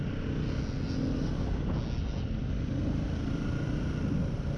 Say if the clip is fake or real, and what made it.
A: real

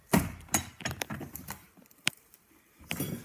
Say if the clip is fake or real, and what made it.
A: real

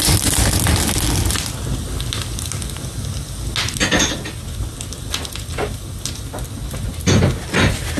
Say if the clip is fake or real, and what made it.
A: real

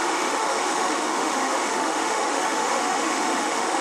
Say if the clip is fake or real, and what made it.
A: fake, autoencoder, DAC-VAE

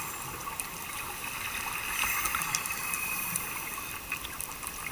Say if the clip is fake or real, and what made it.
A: real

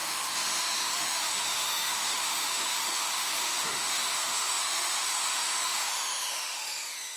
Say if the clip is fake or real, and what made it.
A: fake, autoencoder, DAC-VAE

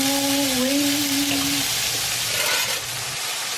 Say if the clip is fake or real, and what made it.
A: real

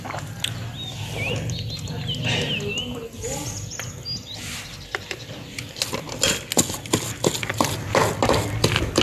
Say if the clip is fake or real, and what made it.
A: real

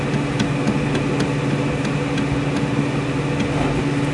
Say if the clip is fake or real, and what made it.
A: real